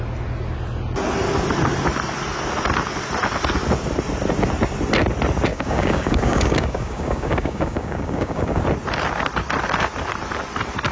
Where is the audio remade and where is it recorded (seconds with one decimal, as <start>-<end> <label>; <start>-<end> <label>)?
0.0-5.5 recorded; 5.5-8.6 remade; 8.6-10.9 recorded